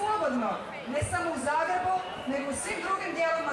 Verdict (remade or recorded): recorded